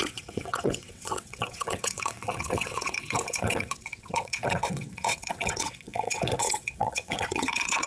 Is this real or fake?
fake